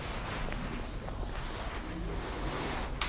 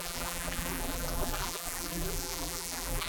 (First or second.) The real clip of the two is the first